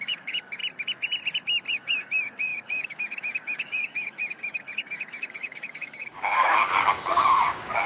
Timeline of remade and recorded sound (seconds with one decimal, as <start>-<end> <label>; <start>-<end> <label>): 0.0-0.6 remade; 0.6-1.7 recorded; 1.7-7.9 remade